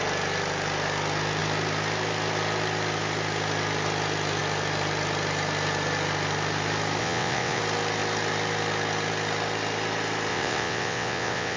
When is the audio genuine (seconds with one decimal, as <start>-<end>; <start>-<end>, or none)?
0.0-7.0; 7.6-10.3